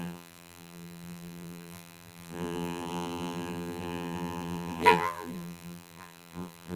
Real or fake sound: fake